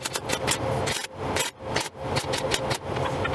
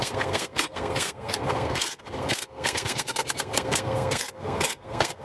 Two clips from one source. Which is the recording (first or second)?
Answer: first